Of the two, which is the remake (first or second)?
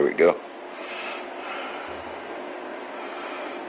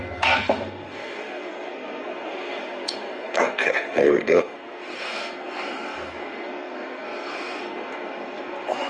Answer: second